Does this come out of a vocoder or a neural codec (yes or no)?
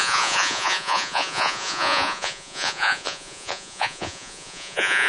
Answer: yes